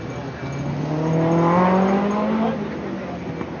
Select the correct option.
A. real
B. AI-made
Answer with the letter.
A